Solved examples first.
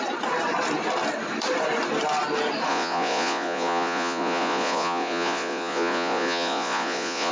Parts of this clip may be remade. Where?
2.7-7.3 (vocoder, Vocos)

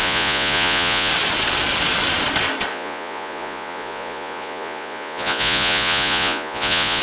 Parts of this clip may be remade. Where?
0.0-1.1 (vocoder, Vocos); 2.7-7.0

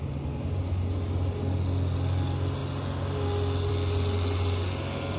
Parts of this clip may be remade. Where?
none

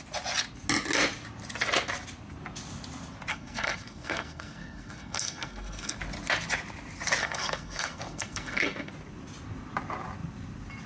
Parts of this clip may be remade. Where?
3.3-6.0 (codec, SNAC); 7.2-8.9

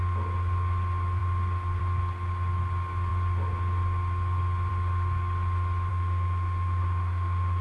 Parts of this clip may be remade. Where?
5.9-7.6 (autoencoder, DAC-VAE)

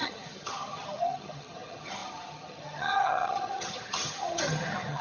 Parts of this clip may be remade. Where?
0.0-5.0 (vocoder, HiFi-GAN)

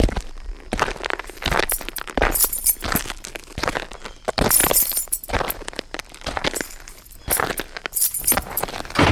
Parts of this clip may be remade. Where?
0.0-9.1 (vocoder, BigVGAN v2)